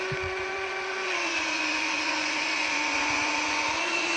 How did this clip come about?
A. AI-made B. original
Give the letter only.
A